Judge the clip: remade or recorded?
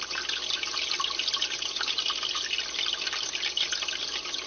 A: recorded